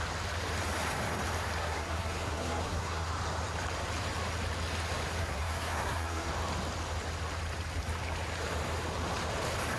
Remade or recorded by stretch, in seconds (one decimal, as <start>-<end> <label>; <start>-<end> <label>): 0.0-1.6 recorded; 1.6-3.1 remade; 3.1-5.2 recorded; 5.2-6.3 remade; 6.3-9.8 recorded